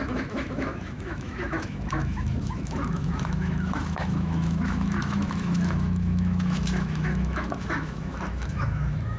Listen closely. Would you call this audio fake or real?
fake